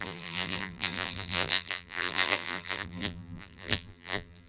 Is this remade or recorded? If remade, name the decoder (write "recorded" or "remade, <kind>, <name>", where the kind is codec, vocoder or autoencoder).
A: remade, vocoder, BigVGAN v2